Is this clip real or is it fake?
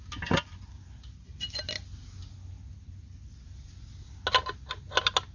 real